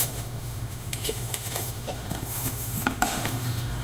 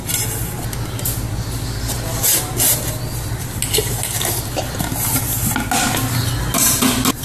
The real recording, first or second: second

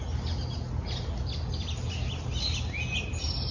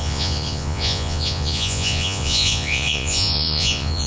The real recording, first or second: first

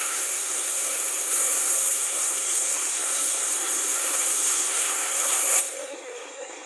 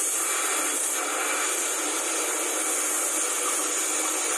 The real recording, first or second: second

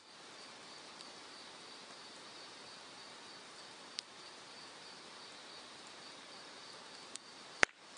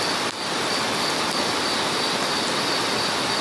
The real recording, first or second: second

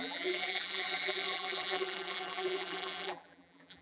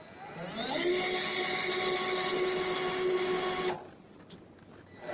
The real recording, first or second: second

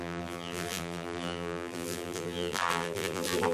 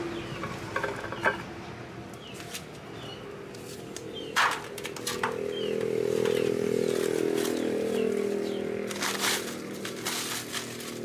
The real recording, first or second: second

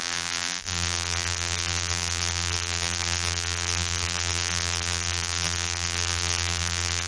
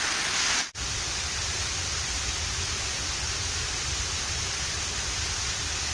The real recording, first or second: second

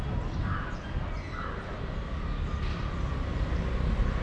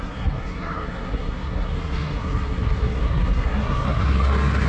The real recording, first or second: first